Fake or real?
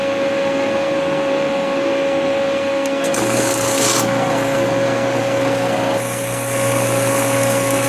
fake